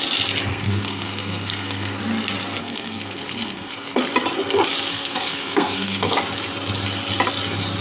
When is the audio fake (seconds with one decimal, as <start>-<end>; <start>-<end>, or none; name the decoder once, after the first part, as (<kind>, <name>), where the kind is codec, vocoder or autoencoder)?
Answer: 0.5-2.0 (codec, SNAC); 2.6-4.0; 4.9-6.2